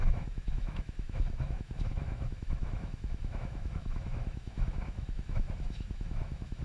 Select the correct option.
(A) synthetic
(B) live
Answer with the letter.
A